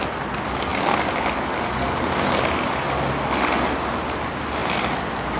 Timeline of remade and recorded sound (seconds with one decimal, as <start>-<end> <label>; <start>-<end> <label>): 0.0-5.4 recorded